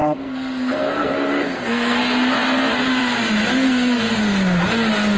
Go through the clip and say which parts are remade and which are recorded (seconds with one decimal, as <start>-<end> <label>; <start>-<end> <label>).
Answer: 0.0-2.0 remade; 2.0-3.5 recorded; 3.5-4.0 remade; 4.0-5.2 recorded

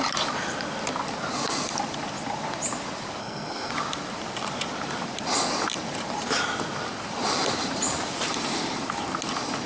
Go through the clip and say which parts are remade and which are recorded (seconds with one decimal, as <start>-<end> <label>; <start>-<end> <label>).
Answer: 0.0-3.2 recorded; 3.2-3.7 remade; 3.7-9.7 recorded